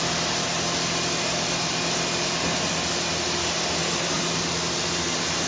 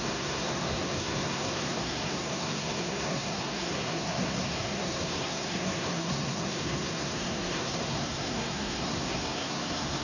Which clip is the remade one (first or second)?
second